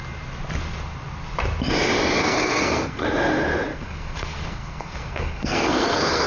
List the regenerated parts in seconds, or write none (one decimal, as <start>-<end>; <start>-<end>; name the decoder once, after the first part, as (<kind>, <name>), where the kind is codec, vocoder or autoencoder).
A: 2.2-3.0 (codec, SNAC); 3.7-6.3